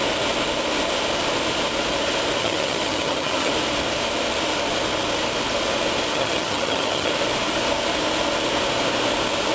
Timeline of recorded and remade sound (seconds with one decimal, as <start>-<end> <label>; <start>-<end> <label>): 0.0-2.4 recorded; 2.4-3.5 remade; 3.5-6.1 recorded; 6.1-7.1 remade; 7.1-9.5 recorded